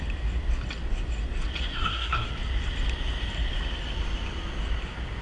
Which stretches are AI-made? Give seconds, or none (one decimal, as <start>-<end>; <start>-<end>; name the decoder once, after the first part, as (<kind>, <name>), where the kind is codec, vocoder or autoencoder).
1.7-2.3 (codec, SNAC)

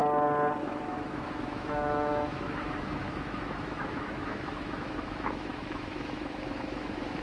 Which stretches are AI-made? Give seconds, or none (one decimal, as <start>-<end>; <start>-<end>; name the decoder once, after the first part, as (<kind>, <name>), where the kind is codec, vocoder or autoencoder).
0.6-7.2 (autoencoder, DAC-VAE)

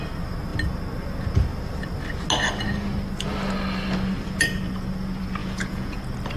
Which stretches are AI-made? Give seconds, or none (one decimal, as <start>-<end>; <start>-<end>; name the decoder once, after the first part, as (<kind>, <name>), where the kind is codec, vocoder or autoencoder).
5.4-6.0 (vocoder, Vocos)

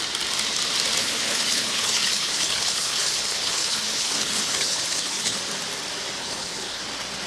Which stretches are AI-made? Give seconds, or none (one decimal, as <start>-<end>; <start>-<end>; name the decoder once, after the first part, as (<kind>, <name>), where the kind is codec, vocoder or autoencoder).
1.0-5.4 (codec, HILCodec); 6.2-6.8